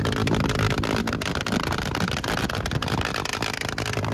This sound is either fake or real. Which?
real